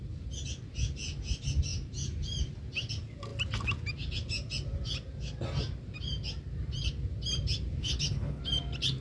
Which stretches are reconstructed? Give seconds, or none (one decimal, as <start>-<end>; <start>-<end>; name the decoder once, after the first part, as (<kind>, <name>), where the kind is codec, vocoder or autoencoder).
7.8-8.4 (codec, HILCodec)